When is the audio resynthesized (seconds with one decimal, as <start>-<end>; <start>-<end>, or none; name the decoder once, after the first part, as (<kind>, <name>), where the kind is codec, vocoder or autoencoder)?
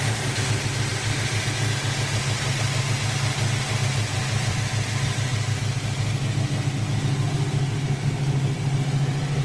4.1-5.6 (vocoder, BigVGAN v2)